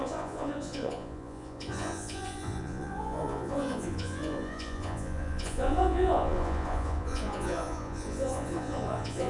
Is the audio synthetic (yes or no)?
yes